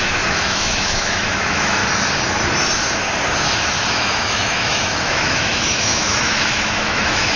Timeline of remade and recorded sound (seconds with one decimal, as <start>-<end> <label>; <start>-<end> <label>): 0.0-1.8 remade; 1.8-3.9 recorded; 3.9-7.4 remade